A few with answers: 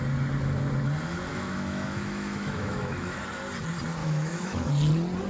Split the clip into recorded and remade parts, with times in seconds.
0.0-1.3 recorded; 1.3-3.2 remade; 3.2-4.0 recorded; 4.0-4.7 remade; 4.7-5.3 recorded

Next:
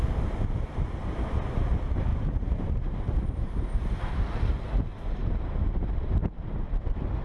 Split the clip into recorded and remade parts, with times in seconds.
0.0-2.1 recorded; 2.1-4.4 remade; 4.4-5.2 recorded; 5.2-6.4 remade; 6.4-7.2 recorded

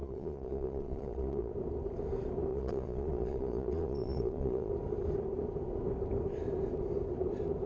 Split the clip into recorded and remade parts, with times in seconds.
0.0-1.5 remade; 1.5-2.5 recorded; 2.5-4.7 remade; 4.7-7.7 recorded